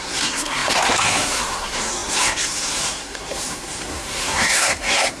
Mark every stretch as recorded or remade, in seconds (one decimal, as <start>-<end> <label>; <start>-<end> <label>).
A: 0.0-5.2 remade

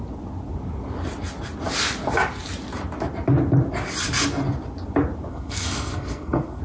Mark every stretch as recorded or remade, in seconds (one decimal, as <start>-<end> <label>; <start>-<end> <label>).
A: 0.0-5.3 recorded; 5.3-6.6 remade

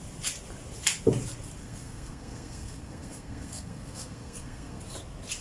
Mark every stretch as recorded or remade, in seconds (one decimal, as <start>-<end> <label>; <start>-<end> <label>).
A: 0.0-1.6 recorded; 1.6-4.8 remade; 4.8-5.4 recorded

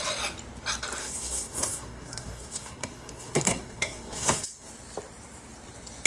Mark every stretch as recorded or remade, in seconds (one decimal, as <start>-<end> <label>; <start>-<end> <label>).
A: 0.0-1.0 recorded; 1.0-4.7 remade; 4.7-6.1 recorded

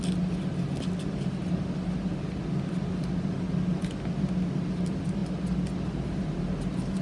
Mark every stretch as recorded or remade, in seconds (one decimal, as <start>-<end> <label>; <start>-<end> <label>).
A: 0.0-7.0 recorded